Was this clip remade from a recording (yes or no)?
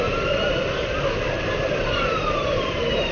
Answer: no